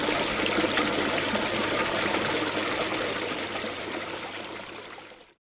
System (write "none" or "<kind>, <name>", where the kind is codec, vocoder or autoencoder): none